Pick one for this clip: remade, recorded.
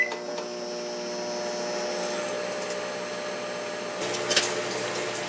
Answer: recorded